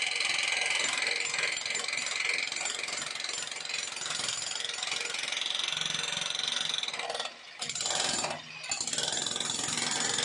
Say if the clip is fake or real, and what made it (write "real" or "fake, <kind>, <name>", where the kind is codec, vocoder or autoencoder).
real